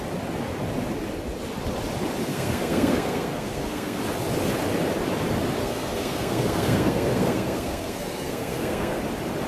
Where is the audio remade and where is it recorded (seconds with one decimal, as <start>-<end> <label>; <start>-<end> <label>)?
0.0-2.3 recorded; 2.3-4.0 remade; 4.0-5.6 recorded; 5.6-9.0 remade; 9.0-9.5 recorded